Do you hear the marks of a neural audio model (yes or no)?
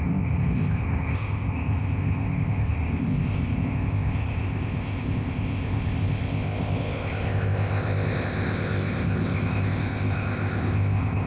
yes